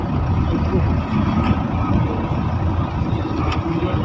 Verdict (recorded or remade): recorded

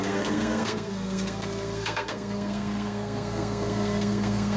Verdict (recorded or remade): remade